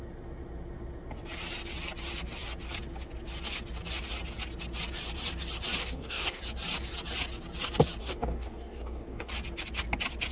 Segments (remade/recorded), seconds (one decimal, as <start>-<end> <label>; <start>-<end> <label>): 0.0-5.8 recorded; 5.8-6.4 remade; 6.4-8.0 recorded; 8.0-9.3 remade; 9.3-10.3 recorded